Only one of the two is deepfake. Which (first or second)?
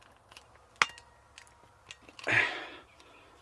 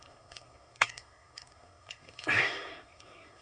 second